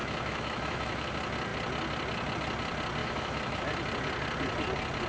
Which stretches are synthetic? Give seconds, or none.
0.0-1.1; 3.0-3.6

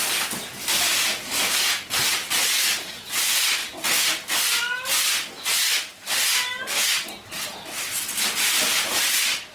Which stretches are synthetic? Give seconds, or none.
0.0-3.6; 4.9-6.6; 8.7-9.5